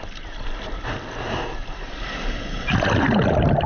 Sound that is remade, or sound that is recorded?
recorded